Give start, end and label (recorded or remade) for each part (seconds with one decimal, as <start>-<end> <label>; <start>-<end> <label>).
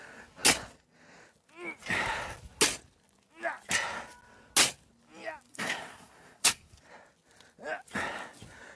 0.0-5.5 recorded; 5.5-6.8 remade; 6.8-8.8 recorded